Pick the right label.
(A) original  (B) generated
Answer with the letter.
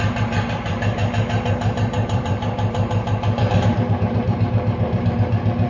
B